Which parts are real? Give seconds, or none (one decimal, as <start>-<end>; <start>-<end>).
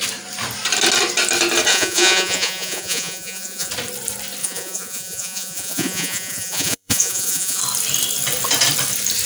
0.0-1.7; 3.7-4.4; 7.6-9.3